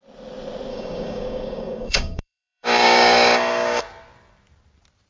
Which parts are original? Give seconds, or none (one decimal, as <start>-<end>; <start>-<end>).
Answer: 0.0-0.7; 3.8-5.1